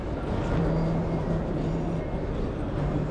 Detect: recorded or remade recorded